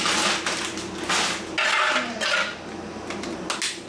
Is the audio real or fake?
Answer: real